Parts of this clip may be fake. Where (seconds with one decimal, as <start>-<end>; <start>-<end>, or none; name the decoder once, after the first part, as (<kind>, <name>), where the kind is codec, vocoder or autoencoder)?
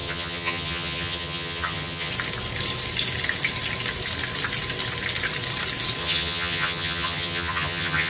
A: 0.0-2.1 (vocoder, HiFi-GAN); 6.0-8.1